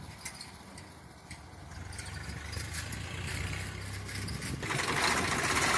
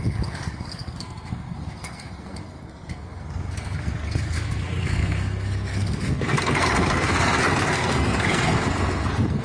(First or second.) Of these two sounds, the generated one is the second